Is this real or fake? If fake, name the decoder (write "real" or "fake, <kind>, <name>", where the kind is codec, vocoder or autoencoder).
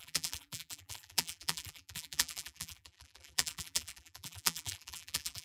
fake, vocoder, BigVGAN v2